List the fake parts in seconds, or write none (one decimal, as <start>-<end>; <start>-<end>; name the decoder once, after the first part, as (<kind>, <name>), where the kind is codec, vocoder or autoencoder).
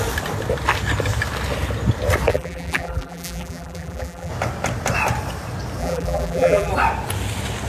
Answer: 2.3-4.3 (vocoder, BigVGAN v2); 5.8-6.7